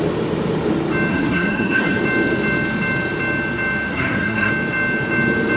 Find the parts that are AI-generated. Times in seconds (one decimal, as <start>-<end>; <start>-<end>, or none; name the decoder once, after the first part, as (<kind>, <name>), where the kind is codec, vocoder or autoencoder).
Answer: 1.1-2.0 (codec, SNAC); 3.9-4.5